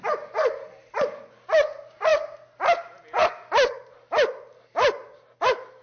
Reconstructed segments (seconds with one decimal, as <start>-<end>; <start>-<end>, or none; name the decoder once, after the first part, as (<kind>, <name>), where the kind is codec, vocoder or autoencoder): none